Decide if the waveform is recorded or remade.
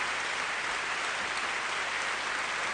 recorded